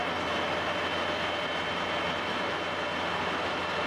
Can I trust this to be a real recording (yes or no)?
yes